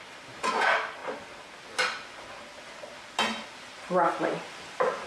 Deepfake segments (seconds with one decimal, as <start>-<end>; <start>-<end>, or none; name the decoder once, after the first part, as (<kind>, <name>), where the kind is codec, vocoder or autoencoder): none